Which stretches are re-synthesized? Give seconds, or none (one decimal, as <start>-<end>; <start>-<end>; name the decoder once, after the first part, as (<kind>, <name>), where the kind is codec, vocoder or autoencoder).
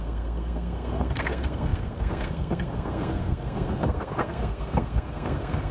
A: 0.0-5.7 (codec, SNAC)